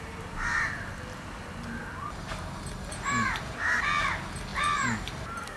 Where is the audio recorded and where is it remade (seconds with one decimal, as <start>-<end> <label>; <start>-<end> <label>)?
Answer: 0.0-4.5 recorded; 4.5-5.6 remade